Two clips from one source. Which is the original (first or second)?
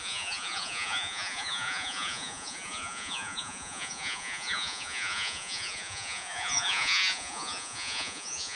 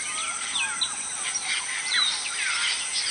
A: second